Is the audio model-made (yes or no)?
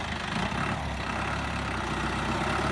no